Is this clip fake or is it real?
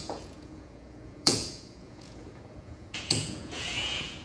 fake